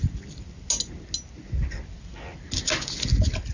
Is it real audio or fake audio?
real